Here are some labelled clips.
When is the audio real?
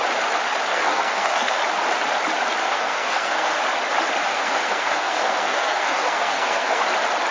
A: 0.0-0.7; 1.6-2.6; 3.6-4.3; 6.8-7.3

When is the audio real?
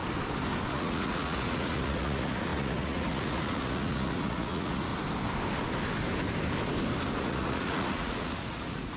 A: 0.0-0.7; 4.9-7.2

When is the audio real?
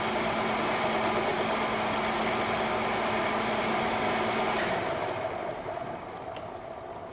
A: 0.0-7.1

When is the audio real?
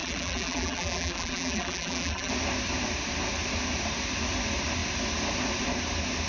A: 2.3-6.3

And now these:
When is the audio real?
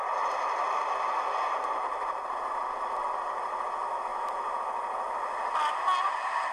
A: 0.0-4.1; 4.6-6.5